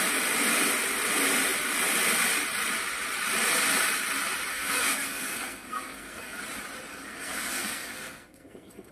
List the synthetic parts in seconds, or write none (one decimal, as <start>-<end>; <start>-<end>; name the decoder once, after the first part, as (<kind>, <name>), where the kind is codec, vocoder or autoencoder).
4.5-6.4 (codec, SNAC); 6.9-8.9